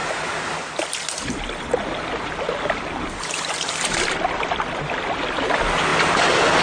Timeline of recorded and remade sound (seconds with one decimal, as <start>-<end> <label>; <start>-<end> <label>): 0.0-6.6 recorded